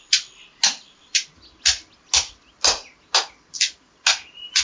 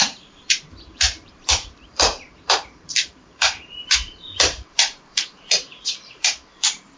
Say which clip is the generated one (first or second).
second